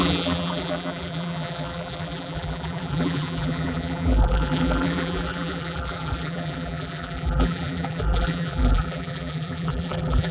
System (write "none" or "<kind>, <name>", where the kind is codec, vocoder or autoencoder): vocoder, BigVGAN v2